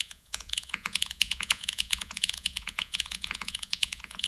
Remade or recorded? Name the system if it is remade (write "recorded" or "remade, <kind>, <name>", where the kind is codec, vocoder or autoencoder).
remade, vocoder, Vocos